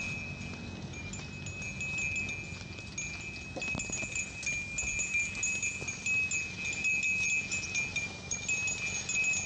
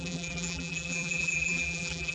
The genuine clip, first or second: first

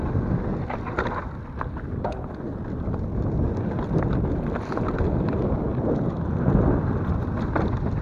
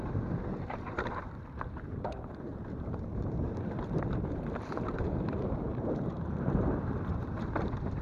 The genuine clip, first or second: first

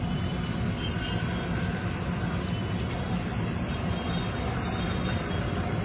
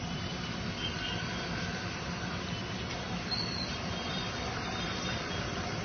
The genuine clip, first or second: first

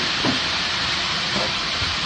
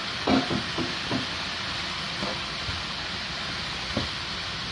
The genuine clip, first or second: second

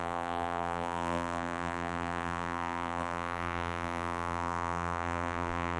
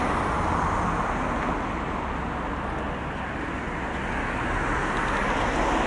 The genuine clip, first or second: second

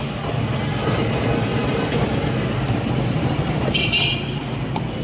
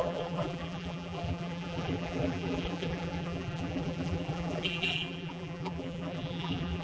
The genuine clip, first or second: first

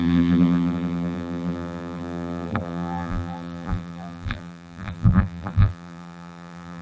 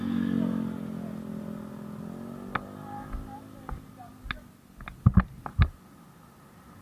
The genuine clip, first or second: second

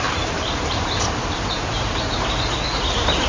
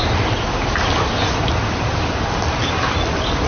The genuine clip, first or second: second